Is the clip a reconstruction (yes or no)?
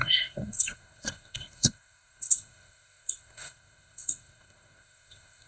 yes